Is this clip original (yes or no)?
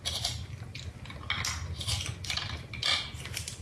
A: yes